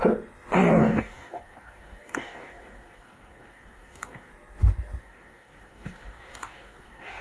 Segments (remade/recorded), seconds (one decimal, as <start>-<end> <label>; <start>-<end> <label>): 0.0-0.7 recorded; 0.7-4.3 remade; 4.3-5.0 recorded; 5.0-7.2 remade